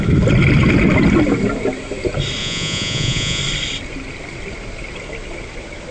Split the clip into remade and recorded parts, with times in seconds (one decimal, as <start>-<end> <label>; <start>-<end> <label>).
0.0-2.4 recorded; 2.4-3.4 remade; 3.4-5.9 recorded